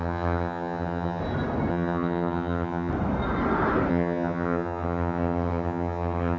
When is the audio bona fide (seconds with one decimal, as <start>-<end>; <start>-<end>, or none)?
1.2-1.7; 2.9-3.9